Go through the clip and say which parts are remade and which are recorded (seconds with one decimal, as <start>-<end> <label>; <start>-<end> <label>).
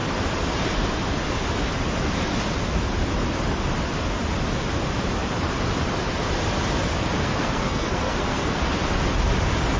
0.0-7.2 recorded; 7.2-8.6 remade; 8.6-9.8 recorded